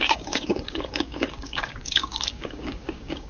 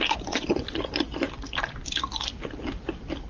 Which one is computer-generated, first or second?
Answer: first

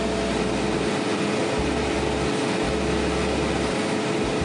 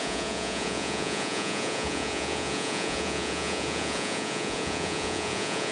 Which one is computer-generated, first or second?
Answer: second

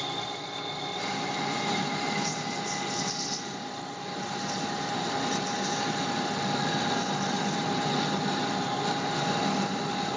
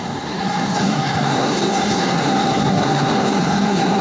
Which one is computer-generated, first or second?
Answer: second